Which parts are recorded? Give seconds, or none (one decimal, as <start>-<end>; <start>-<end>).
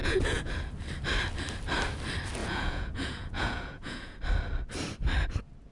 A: 0.5-2.4; 4.2-5.7